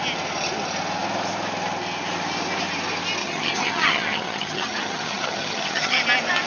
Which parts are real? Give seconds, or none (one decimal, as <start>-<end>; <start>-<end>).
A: 0.0-3.2; 6.0-6.5